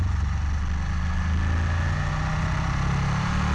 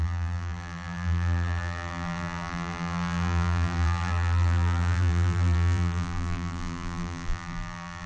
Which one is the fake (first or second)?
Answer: second